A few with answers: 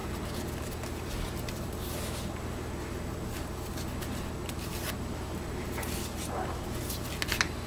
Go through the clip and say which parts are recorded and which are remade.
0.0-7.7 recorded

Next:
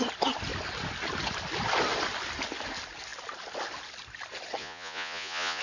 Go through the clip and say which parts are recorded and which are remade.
0.0-4.6 recorded; 4.6-5.6 remade

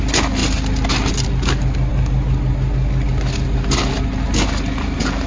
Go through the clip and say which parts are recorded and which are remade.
0.0-5.3 recorded

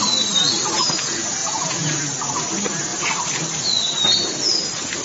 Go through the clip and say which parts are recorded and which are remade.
0.0-1.4 recorded; 1.4-2.0 remade; 2.0-5.0 recorded

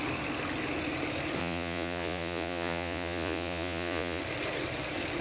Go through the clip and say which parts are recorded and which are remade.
0.0-1.4 recorded; 1.4-4.2 remade; 4.2-5.2 recorded

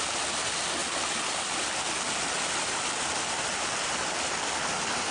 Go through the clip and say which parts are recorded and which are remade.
0.0-5.1 recorded